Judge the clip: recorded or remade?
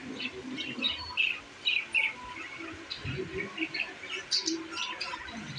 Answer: recorded